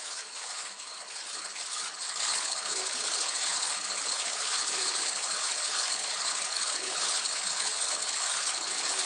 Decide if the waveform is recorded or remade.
remade